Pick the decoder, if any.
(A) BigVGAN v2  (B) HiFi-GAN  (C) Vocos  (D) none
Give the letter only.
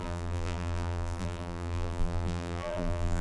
A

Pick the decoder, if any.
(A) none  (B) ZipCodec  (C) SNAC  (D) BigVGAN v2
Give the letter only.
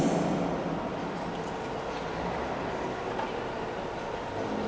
A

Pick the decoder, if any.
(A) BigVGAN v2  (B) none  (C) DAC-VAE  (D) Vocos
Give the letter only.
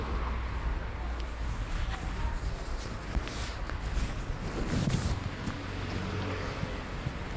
B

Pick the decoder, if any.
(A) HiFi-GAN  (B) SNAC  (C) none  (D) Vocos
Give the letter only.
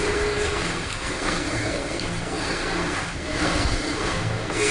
B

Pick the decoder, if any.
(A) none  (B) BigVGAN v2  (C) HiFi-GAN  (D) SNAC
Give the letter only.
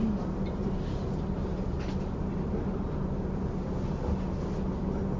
A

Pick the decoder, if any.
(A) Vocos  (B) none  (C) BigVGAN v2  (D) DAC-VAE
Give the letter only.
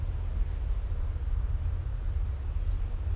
B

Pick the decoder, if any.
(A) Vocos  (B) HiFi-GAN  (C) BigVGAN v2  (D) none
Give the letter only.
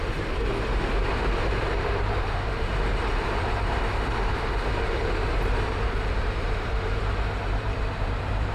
C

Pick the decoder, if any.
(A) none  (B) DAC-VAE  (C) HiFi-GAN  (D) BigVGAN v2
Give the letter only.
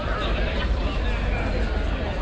A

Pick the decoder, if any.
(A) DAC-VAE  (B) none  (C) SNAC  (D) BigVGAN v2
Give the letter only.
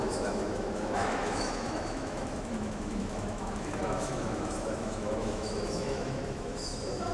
A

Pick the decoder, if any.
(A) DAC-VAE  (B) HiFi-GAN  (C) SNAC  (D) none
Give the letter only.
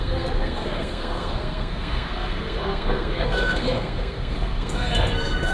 C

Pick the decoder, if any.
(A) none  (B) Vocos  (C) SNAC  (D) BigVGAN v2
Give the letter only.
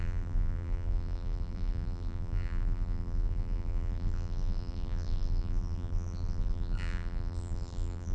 D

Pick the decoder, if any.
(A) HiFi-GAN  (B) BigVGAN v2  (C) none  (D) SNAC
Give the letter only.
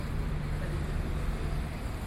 C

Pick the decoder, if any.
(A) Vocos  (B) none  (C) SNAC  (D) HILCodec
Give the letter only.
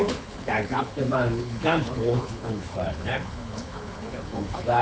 D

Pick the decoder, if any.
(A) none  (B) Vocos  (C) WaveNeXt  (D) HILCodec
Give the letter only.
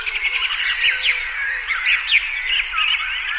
A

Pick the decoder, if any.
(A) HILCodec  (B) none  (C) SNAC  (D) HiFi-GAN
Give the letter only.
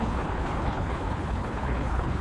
A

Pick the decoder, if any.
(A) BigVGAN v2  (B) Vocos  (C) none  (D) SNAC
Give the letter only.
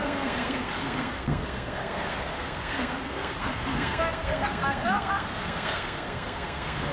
D